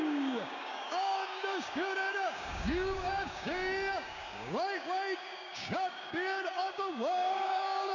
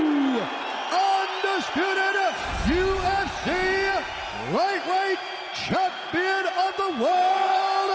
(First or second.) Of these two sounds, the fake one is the first